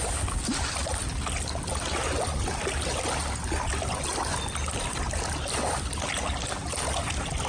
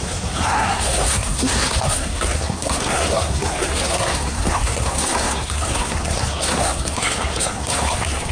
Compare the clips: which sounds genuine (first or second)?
first